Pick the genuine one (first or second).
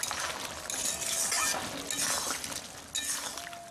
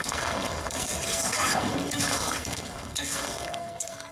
first